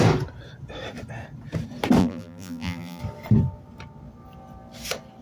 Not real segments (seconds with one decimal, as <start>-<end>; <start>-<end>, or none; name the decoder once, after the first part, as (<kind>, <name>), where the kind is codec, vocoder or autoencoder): 2.0-3.0 (vocoder, BigVGAN v2)